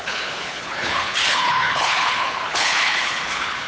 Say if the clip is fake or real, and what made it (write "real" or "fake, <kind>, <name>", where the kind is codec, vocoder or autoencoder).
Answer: fake, codec, HILCodec